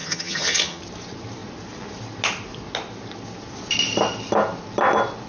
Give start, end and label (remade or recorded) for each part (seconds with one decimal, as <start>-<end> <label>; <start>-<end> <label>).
0.0-0.8 remade; 0.8-5.3 recorded

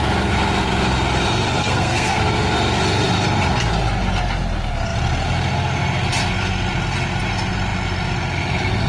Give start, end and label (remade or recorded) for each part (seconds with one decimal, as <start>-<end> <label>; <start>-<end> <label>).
0.0-1.6 recorded; 1.6-2.2 remade; 2.2-8.9 recorded

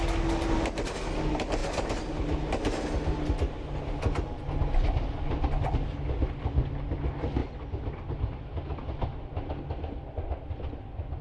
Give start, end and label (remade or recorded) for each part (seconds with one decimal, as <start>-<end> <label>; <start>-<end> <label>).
0.0-11.2 recorded

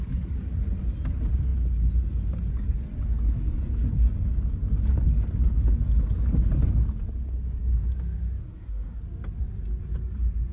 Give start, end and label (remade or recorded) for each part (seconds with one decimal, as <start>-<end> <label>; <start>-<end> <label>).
0.0-8.4 recorded; 8.4-9.0 remade; 9.0-10.5 recorded

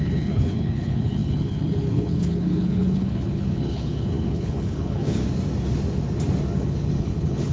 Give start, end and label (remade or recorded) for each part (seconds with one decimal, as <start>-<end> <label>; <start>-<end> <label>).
0.0-5.2 remade; 5.2-6.6 recorded; 6.6-7.5 remade